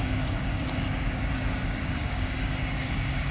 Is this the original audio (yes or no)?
no